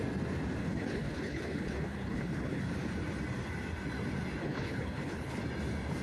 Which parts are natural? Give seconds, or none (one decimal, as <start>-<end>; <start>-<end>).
0.0-0.6; 2.6-4.4; 5.4-6.0